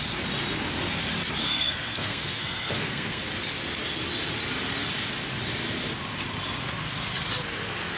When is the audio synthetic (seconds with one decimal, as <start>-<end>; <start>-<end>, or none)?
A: 1.4-3.2